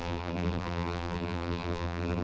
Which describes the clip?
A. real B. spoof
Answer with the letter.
B